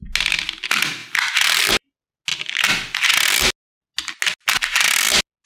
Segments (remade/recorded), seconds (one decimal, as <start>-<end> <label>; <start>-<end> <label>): 0.0-5.5 recorded